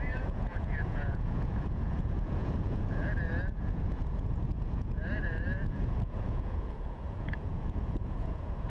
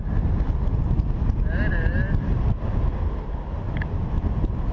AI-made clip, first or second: first